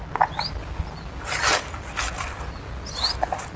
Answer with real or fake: real